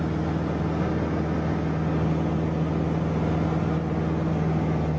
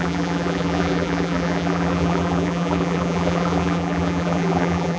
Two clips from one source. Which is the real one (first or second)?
first